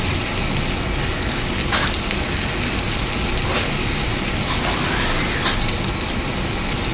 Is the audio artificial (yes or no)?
no